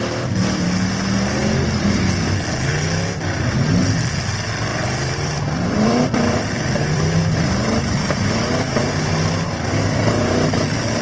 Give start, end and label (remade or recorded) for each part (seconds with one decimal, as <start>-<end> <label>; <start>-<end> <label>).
0.0-4.7 recorded; 4.7-9.6 remade; 9.6-11.0 recorded